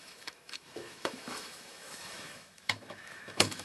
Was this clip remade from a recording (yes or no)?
yes